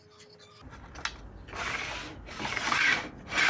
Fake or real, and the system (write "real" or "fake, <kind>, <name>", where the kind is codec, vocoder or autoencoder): real